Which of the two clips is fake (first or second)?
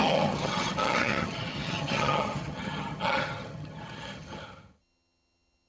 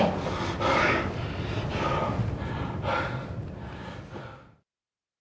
first